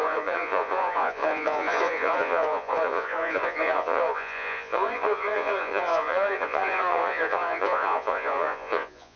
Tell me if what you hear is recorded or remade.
remade